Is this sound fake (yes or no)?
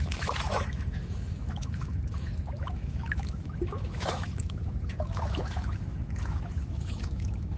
yes